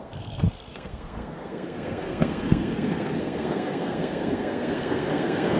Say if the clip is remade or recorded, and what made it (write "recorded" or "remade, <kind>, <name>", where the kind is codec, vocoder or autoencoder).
remade, codec, SNAC